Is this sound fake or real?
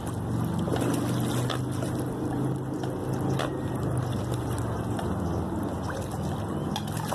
real